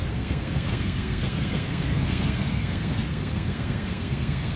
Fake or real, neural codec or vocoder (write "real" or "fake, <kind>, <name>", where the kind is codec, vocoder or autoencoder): fake, codec, SNAC